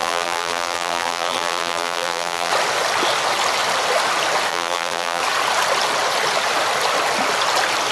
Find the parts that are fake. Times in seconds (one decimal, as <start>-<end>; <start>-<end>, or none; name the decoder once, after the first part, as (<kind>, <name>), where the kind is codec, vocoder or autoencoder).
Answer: 0.0-2.5 (vocoder, BigVGAN v2); 4.5-5.2